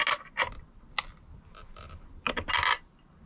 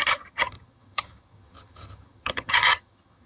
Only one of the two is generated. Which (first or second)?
second